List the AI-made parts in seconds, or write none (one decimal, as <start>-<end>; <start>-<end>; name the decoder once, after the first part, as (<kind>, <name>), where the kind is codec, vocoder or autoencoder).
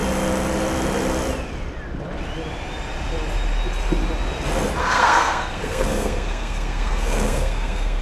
4.8-8.0 (codec, SNAC)